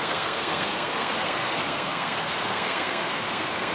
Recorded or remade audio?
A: remade